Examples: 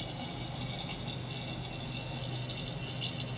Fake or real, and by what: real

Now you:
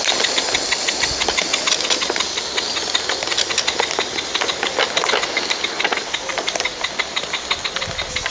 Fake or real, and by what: real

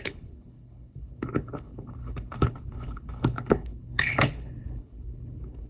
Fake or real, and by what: fake, codec, HILCodec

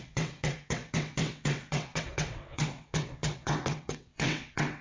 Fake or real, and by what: fake, vocoder, WaveNeXt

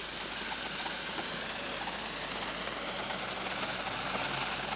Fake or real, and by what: real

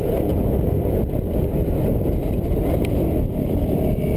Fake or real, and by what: real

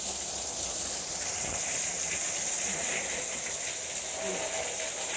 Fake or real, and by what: real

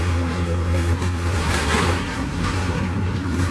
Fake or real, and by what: fake, codec, SNAC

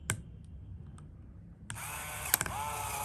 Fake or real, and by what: real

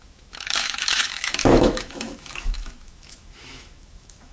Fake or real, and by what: fake, autoencoder, DAC-VAE